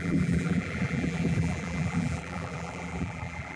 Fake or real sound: fake